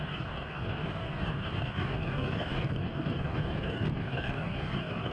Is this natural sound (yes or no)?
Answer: no